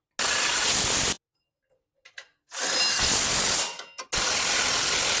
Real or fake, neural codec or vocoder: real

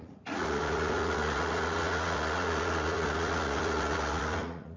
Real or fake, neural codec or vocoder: fake, vocoder, Vocos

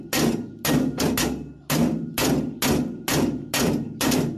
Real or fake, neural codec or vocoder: real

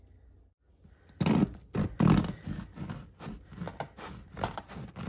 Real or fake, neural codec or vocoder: real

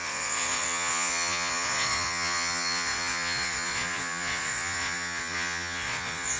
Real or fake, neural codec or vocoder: fake, vocoder, Vocos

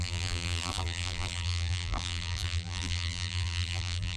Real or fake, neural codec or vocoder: fake, vocoder, BigVGAN v2